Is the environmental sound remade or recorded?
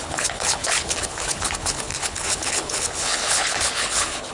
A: remade